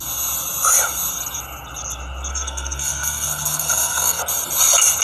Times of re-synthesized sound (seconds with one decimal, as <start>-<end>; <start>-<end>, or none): 2.3-4.2